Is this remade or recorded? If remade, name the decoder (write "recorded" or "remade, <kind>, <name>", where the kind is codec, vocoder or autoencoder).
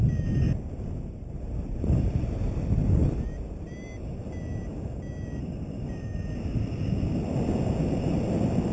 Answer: recorded